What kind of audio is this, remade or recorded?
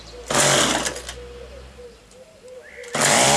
recorded